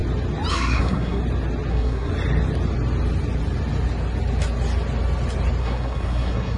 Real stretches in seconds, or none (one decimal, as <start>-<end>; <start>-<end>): 0.0-0.5; 1.2-1.7; 2.1-5.6

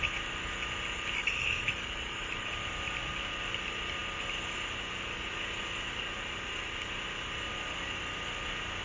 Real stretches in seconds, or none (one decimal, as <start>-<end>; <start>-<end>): 0.0-1.2; 2.5-8.8

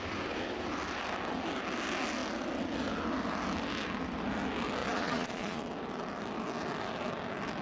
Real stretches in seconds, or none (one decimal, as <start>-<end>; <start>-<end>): 0.0-4.8; 5.6-7.6

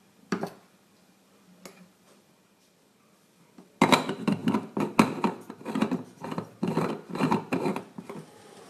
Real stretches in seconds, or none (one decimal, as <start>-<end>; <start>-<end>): 0.0-8.7

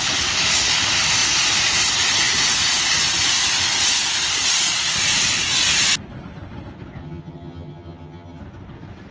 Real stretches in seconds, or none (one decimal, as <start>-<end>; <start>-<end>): 0.0-7.0; 8.4-9.1

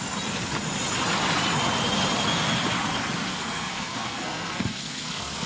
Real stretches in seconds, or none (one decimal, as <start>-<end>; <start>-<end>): 0.0-3.3

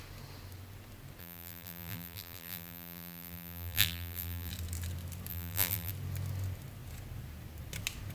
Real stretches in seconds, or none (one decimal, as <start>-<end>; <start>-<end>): 0.0-1.2; 4.5-5.3; 5.9-8.1